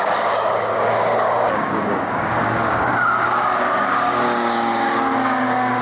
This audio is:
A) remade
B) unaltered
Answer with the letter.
A